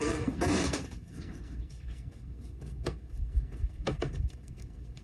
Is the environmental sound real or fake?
fake